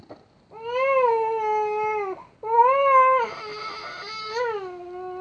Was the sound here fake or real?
real